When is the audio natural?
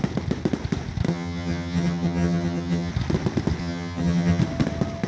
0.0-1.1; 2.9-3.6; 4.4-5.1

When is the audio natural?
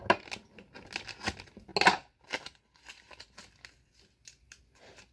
0.0-5.1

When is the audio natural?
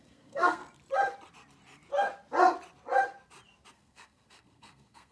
0.6-3.7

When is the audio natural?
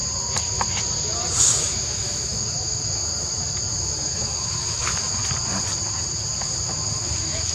0.0-1.4; 3.0-3.8; 5.2-7.1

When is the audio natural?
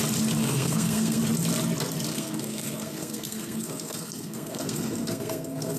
0.0-0.4; 1.2-2.1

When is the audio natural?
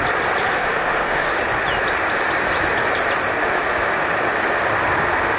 0.0-0.5; 1.3-5.4